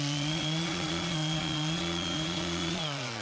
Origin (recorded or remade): remade